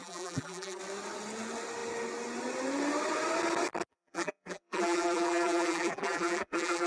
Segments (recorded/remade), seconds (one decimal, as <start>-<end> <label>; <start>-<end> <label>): 0.0-0.8 remade; 0.8-3.9 recorded; 3.9-6.9 remade